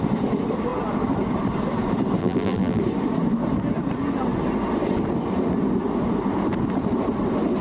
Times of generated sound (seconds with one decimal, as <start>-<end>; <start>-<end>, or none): 2.2-2.8